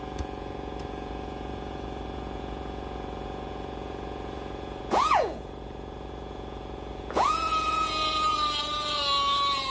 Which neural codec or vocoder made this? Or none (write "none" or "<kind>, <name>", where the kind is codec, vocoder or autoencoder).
vocoder, Vocos